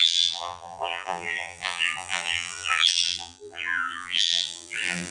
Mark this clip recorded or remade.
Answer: remade